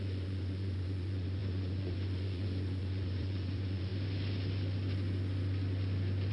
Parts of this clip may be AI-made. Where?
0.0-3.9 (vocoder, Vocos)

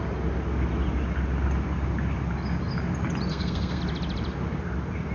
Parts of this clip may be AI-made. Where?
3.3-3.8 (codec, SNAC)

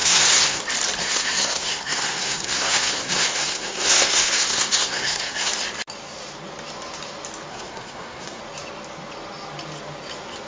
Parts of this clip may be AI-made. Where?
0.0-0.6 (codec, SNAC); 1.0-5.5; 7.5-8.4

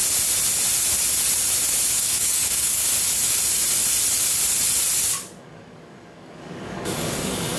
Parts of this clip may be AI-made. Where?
2.0-2.8 (codec, DAC); 5.4-7.6

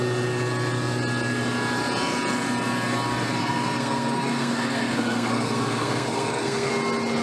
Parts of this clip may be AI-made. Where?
3.4-6.7 (codec, SNAC)

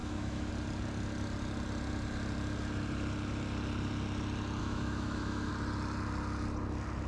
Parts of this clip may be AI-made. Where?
0.0-0.5 (autoencoder, DAC-VAE); 4.6-5.5

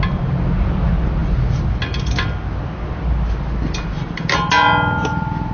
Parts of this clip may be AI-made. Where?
none